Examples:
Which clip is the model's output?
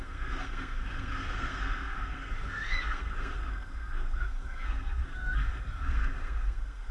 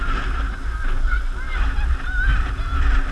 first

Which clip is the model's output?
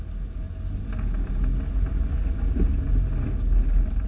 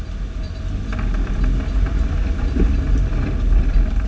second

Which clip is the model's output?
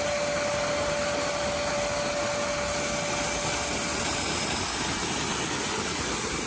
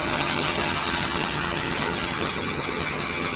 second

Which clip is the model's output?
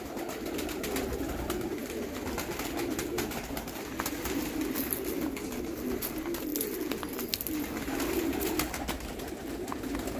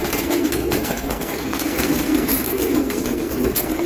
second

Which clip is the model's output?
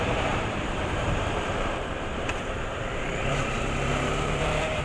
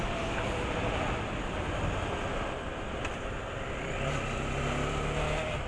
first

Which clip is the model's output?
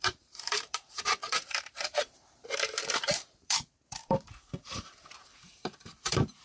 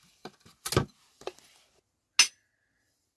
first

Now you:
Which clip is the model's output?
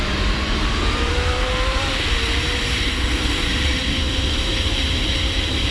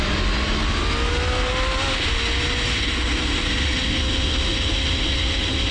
first